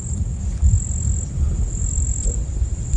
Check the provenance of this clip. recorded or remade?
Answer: remade